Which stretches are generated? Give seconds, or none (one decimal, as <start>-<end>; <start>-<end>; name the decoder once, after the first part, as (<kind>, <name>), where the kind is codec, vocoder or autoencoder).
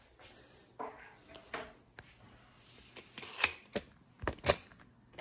none